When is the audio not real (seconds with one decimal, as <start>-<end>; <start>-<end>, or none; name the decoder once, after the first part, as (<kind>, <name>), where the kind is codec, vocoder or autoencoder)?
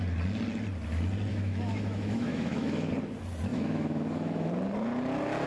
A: 1.3-2.9 (autoencoder, DAC-VAE); 3.5-4.5